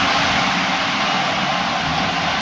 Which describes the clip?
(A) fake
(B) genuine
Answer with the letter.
B